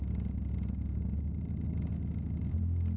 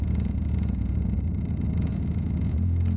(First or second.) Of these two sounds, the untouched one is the first